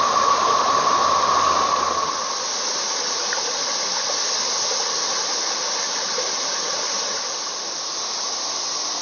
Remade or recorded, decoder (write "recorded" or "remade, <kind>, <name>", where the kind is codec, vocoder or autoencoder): recorded